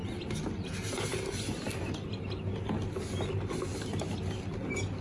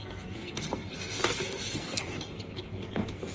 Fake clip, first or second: second